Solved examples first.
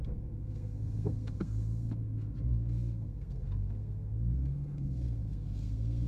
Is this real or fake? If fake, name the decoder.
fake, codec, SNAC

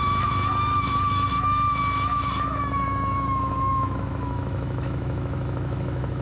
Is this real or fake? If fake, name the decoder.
fake, autoencoder, DAC-VAE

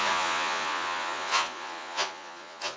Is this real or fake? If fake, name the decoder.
fake, vocoder, Vocos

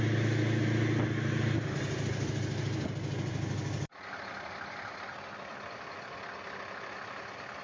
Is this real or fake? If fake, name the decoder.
real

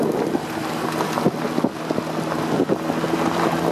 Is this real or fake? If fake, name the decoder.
real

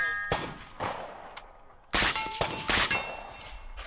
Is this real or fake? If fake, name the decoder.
real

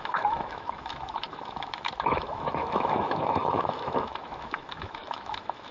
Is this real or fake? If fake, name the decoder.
fake, autoencoder, DAC-VAE